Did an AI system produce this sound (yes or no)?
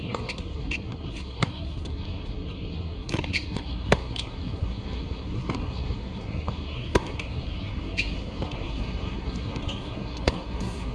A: yes